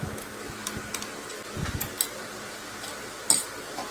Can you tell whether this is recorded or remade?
recorded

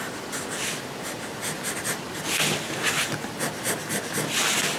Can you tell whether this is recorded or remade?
recorded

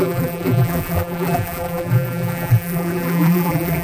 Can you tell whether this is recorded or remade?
remade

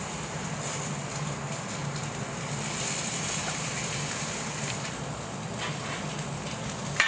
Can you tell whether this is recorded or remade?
recorded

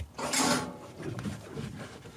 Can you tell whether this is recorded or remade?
recorded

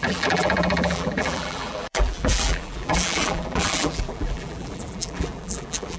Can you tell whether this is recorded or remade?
remade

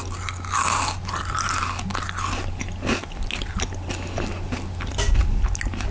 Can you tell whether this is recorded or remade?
recorded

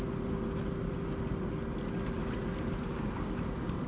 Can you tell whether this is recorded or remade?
recorded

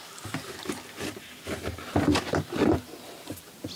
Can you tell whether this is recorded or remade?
recorded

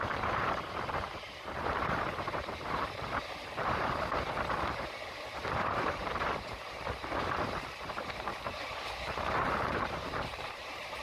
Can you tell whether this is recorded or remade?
remade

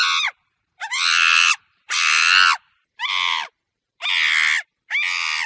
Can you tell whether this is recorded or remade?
recorded